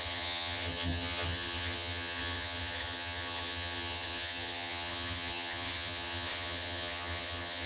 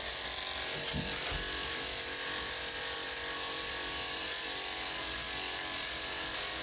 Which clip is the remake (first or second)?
first